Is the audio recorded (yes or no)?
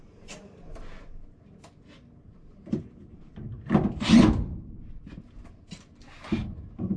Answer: yes